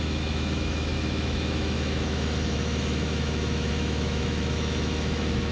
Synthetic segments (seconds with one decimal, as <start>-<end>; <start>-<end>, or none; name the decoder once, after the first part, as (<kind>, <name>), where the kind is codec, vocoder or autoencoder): 0.0-5.5 (autoencoder, DAC-VAE)